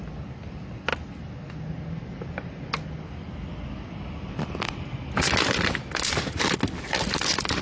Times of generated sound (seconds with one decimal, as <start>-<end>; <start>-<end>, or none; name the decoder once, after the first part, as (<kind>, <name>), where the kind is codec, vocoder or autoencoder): 0.0-0.9 (vocoder, BigVGAN v2); 3.1-7.6